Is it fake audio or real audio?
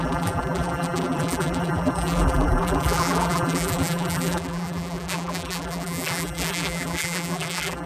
fake